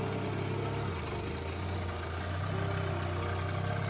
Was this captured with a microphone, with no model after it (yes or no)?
yes